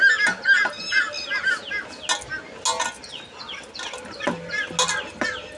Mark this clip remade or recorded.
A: recorded